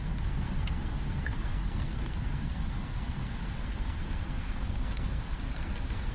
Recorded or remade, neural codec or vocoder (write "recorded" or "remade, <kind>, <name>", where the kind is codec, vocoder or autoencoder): remade, codec, SNAC